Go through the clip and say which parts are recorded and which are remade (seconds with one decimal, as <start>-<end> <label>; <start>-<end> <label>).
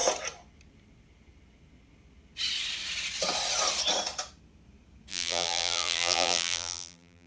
0.0-5.1 recorded; 5.1-7.3 remade